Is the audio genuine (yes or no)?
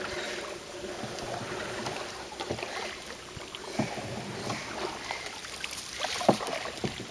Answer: yes